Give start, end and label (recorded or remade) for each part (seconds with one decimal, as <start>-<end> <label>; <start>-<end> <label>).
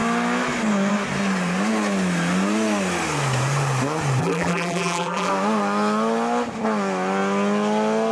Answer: 0.0-4.2 recorded; 4.2-5.3 remade; 5.3-8.1 recorded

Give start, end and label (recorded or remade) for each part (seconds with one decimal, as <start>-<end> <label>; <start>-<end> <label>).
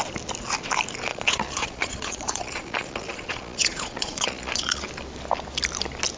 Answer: 0.0-1.1 recorded; 1.1-4.8 remade; 4.8-6.2 recorded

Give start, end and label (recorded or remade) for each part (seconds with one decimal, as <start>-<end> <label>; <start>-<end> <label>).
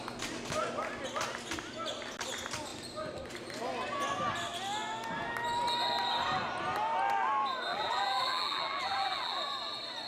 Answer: 0.0-7.7 recorded; 7.7-9.4 remade; 9.4-10.1 recorded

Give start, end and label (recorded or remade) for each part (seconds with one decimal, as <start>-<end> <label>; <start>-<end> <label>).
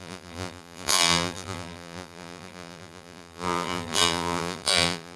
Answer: 0.0-5.2 remade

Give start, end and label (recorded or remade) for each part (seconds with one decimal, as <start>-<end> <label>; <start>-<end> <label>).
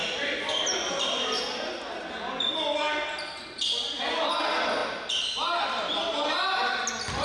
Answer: 0.0-7.2 recorded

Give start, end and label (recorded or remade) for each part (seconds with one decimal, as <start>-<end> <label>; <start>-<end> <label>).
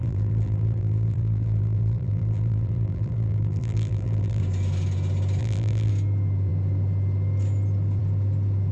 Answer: 0.0-4.4 remade; 4.4-5.4 recorded; 5.4-5.9 remade; 5.9-8.7 recorded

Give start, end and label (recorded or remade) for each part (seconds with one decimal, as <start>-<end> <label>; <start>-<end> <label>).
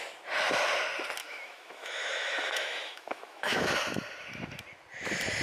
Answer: 0.0-1.2 recorded; 1.2-3.7 remade; 3.7-5.4 recorded